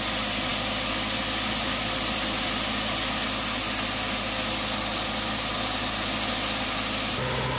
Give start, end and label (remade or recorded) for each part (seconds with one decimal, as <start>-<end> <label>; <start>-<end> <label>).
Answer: 0.0-7.6 recorded

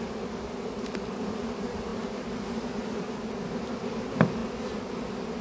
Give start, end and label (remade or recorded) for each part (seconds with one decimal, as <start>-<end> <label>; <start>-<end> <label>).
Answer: 0.0-5.4 recorded

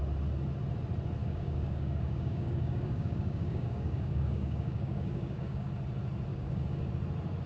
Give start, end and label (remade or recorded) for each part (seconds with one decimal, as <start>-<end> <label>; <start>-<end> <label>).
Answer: 0.0-1.2 recorded; 1.2-5.7 remade; 5.7-6.3 recorded; 6.3-6.9 remade; 6.9-7.5 recorded

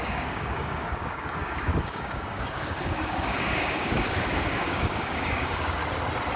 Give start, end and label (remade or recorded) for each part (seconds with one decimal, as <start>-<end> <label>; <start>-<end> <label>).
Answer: 0.0-5.8 remade; 5.8-6.4 recorded

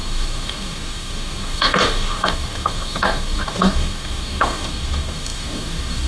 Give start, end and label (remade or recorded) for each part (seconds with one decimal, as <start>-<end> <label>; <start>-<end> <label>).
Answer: 0.0-6.1 remade

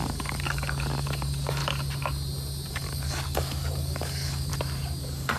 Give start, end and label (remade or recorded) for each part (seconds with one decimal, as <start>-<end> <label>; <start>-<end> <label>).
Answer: 0.0-1.6 remade; 1.6-2.7 recorded; 2.7-4.5 remade; 4.5-5.0 recorded; 5.0-5.4 remade

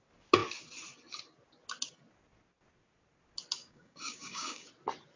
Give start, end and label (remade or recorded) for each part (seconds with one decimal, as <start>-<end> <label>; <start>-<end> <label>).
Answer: 0.0-3.6 recorded; 3.6-4.7 remade; 4.7-5.2 recorded

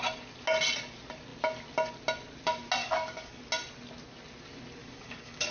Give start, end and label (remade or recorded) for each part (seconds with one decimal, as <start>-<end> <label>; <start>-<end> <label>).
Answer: 0.0-2.8 recorded; 2.8-3.4 remade; 3.4-4.8 recorded; 4.8-5.5 remade